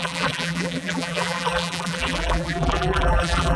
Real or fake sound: fake